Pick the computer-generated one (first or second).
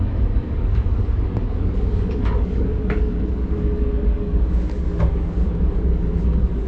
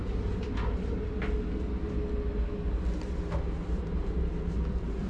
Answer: first